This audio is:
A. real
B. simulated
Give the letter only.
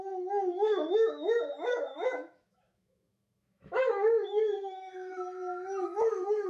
B